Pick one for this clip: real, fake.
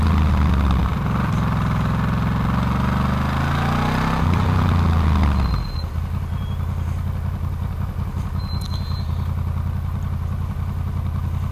real